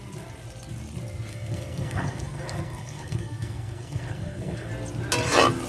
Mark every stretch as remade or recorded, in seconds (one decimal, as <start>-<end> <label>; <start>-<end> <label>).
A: 0.0-1.3 recorded; 1.3-4.7 remade; 4.7-5.7 recorded